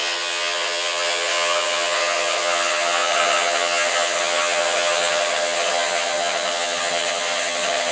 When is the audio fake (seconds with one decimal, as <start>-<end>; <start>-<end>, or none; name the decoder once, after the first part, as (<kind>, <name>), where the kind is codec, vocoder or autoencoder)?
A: 0.0-7.9 (vocoder, HiFi-GAN)

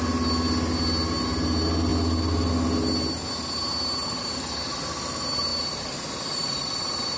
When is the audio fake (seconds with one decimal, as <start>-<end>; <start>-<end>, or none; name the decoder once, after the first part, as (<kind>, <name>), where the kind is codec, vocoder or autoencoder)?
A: none